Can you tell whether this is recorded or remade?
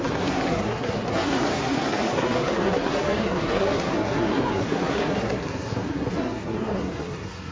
remade